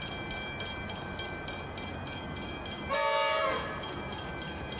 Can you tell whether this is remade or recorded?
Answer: recorded